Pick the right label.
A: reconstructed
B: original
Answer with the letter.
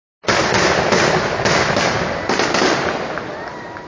B